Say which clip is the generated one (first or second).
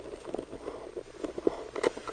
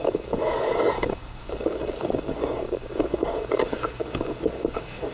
second